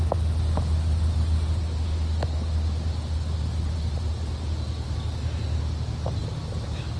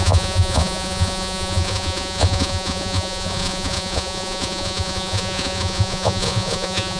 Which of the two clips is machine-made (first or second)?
second